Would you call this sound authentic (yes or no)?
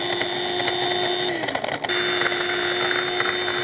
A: yes